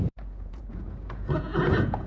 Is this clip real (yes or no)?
no